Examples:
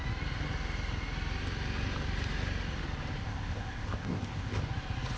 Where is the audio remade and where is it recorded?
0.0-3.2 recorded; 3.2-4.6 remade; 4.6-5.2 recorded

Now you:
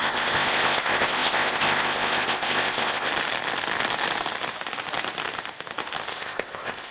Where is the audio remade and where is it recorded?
0.0-3.1 remade; 3.1-6.1 recorded; 6.1-6.9 remade

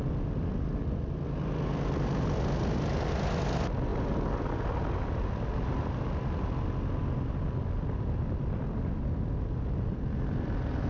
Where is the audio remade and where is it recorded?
0.0-10.9 recorded